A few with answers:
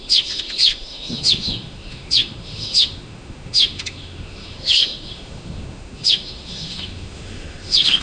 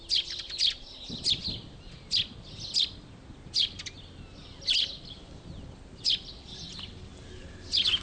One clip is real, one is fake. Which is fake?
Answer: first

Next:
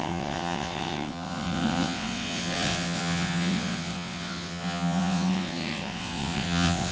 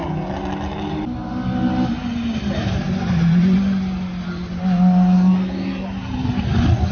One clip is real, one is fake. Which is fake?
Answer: first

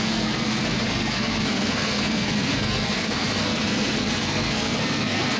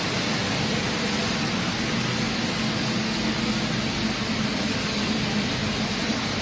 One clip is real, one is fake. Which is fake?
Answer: first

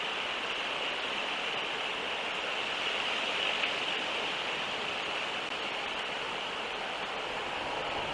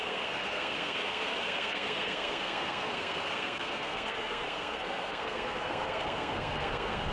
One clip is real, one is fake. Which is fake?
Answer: second